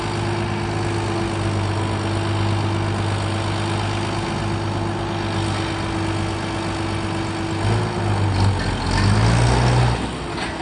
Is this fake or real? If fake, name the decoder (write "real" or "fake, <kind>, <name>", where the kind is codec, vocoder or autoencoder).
real